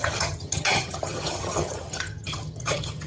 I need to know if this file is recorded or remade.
remade